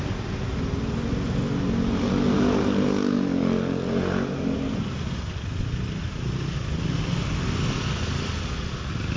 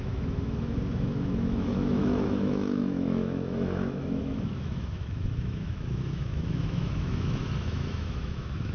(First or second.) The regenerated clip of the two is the second